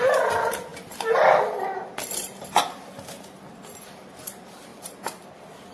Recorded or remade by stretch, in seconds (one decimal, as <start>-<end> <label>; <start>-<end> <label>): 0.0-5.7 recorded